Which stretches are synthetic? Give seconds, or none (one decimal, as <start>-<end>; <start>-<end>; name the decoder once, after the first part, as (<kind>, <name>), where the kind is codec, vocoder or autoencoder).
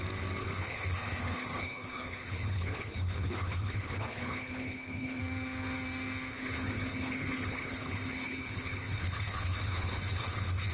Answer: 0.4-5.2 (codec, HILCodec); 6.3-10.7